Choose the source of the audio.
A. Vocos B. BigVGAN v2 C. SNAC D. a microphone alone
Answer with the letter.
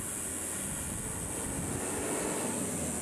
D